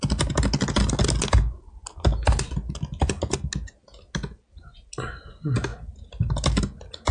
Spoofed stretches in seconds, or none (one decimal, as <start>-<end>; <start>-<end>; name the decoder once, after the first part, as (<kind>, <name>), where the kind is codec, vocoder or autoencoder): none